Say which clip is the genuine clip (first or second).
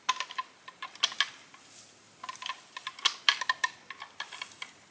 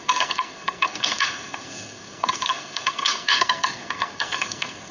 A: first